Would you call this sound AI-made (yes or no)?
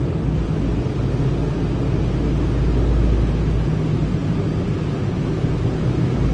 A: no